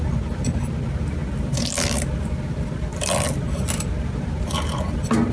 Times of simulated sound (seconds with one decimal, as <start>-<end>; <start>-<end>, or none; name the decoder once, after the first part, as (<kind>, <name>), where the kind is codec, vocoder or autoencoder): none